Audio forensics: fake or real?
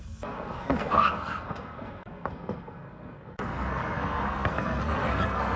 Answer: fake